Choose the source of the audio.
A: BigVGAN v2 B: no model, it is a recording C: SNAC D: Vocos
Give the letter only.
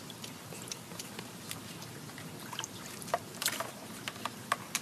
B